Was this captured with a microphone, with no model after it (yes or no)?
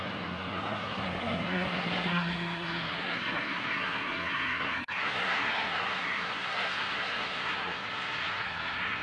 no